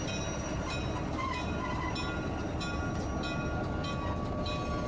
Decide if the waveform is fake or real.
real